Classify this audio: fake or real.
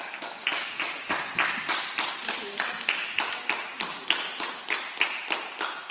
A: real